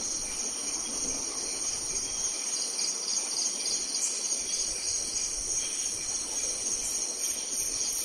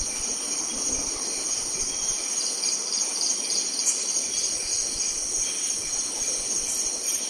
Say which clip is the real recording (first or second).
first